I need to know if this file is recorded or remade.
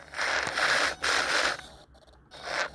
remade